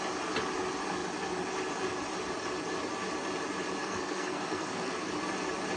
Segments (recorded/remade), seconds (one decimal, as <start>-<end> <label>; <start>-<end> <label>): 0.0-3.8 recorded; 3.8-5.1 remade; 5.1-5.8 recorded